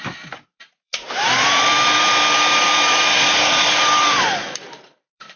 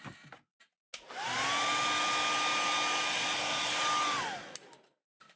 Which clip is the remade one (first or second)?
first